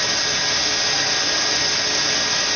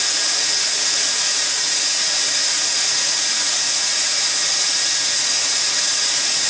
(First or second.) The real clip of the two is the first